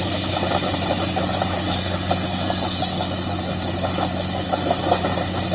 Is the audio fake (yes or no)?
no